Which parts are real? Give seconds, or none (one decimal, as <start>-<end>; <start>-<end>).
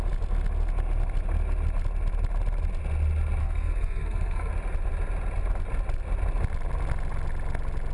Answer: 0.0-3.4; 4.5-7.9